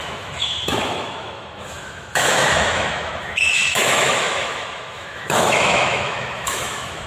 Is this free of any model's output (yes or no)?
no